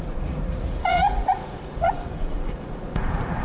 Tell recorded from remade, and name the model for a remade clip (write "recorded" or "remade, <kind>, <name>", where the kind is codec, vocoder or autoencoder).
remade, vocoder, Vocos